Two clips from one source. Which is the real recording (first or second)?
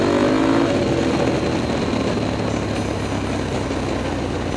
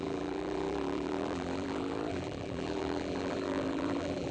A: first